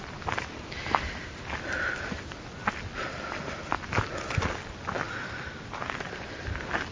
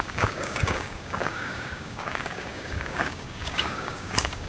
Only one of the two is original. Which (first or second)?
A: first